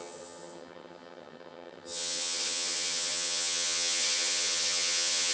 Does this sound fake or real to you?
fake